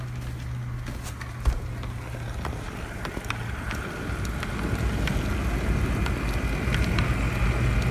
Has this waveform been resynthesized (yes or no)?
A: no